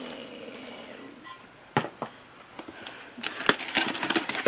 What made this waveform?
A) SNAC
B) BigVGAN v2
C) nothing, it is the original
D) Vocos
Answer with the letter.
C